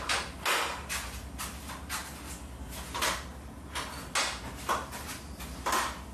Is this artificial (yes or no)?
no